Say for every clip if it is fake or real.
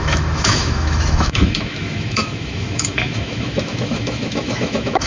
fake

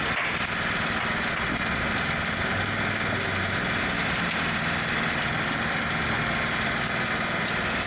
real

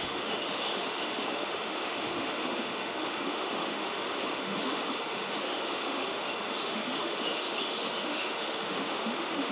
fake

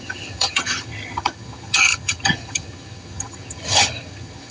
fake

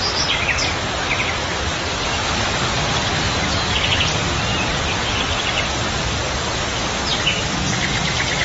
real